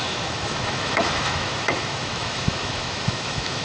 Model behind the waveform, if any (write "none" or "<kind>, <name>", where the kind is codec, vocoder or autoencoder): autoencoder, DAC-VAE